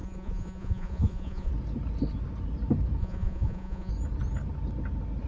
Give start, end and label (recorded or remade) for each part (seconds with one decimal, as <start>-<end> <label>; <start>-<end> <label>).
0.0-1.5 remade; 1.5-3.0 recorded; 3.0-3.9 remade; 3.9-5.3 recorded